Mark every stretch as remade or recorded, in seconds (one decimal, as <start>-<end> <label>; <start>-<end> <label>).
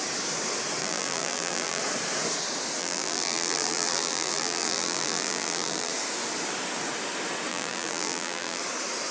0.0-0.8 recorded; 0.8-1.8 remade; 1.8-2.8 recorded; 2.8-5.9 remade; 5.9-7.5 recorded; 7.5-8.6 remade; 8.6-9.1 recorded